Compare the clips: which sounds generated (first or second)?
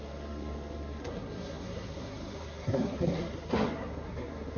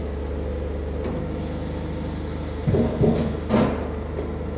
first